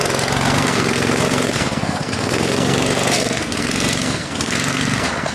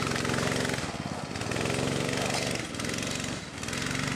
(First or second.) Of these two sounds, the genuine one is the second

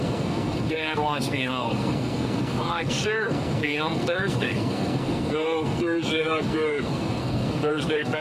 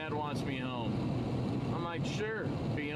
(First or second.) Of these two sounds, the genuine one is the second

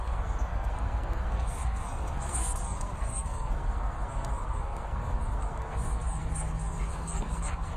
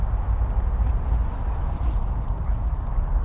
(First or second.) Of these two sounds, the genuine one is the second